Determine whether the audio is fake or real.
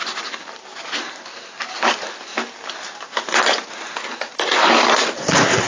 real